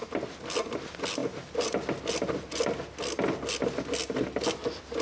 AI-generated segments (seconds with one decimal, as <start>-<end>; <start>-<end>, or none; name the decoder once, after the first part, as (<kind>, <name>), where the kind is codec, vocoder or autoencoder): none